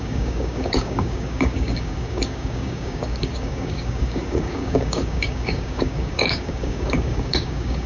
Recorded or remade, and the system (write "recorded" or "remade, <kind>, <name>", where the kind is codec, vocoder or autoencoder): remade, codec, DAC